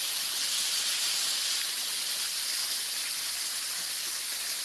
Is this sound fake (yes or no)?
no